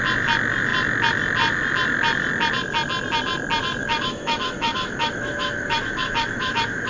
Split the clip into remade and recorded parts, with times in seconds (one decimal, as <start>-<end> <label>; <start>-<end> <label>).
0.0-3.8 recorded; 3.8-6.9 remade